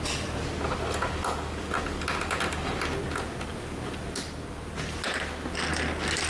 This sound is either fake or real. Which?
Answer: real